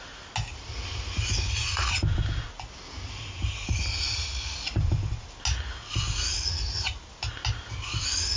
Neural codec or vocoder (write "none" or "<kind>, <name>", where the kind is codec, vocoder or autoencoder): none